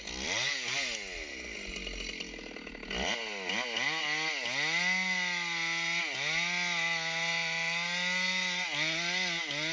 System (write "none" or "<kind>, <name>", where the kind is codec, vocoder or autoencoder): none